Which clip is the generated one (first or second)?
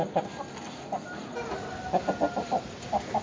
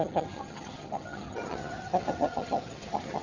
second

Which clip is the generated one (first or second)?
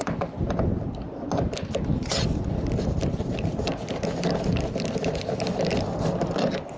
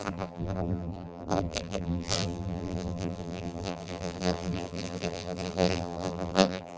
second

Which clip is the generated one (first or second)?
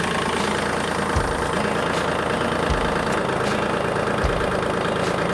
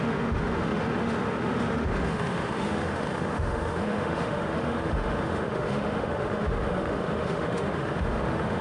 second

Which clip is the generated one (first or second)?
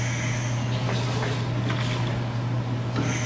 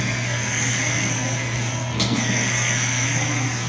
second